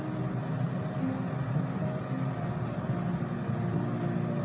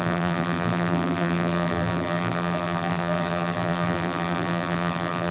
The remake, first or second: second